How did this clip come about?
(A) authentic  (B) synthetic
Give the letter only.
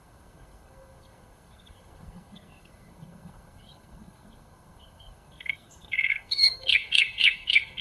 B